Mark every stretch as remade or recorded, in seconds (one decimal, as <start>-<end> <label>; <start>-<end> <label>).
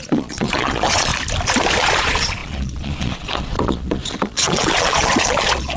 0.0-1.1 remade; 1.1-1.8 recorded; 1.8-5.8 remade